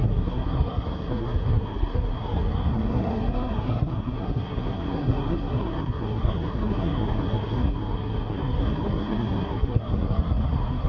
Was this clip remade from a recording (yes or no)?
yes